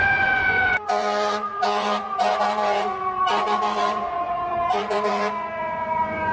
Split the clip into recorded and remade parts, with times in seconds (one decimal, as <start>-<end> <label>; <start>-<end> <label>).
0.0-6.3 remade